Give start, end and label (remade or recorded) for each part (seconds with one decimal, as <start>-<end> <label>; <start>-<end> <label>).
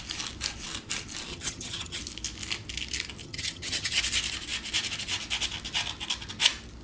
0.0-1.3 recorded; 1.3-2.0 remade; 2.0-3.2 recorded; 3.2-4.0 remade; 4.0-6.8 recorded